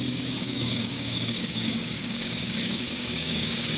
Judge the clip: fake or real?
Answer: fake